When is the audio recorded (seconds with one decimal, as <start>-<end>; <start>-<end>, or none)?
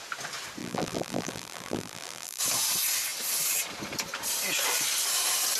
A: 0.0-0.6; 2.4-5.6